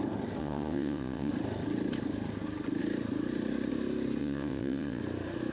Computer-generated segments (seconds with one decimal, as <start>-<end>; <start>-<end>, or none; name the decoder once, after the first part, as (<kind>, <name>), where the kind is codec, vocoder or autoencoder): 0.4-1.3 (vocoder, WaveNeXt); 4.2-5.0